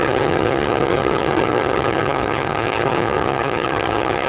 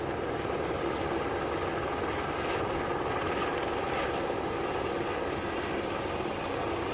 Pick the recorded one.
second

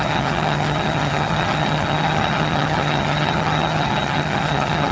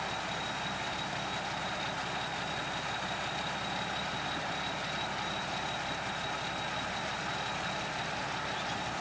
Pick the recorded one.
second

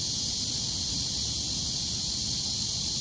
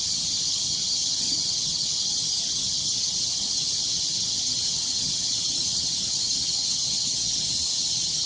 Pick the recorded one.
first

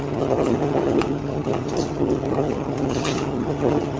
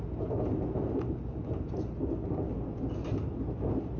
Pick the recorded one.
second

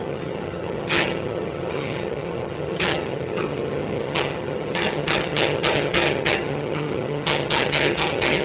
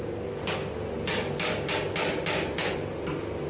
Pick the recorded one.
second